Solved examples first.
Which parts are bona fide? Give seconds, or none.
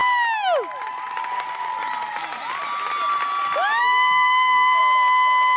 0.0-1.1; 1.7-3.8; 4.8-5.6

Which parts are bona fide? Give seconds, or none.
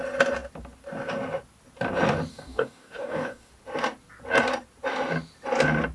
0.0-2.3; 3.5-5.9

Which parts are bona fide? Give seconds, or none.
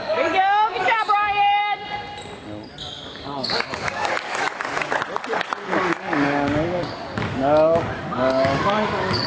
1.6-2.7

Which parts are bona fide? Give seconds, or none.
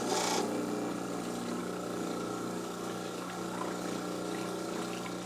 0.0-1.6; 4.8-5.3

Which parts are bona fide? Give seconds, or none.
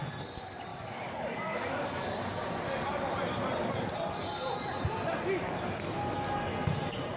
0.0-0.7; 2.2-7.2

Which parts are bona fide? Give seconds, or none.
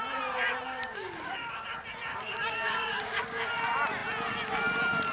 0.0-0.7; 1.5-2.1; 3.6-5.1